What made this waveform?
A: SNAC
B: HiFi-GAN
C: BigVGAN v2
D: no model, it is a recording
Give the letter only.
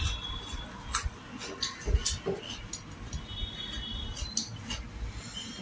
D